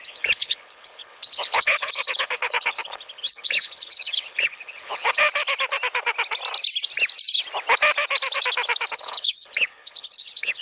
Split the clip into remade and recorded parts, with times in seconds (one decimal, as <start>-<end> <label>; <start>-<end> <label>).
0.0-5.2 remade; 5.2-8.9 recorded; 8.9-10.6 remade